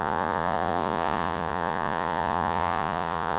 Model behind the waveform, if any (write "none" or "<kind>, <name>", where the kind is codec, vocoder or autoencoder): vocoder, Vocos